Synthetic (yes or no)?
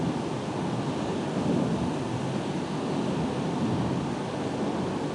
no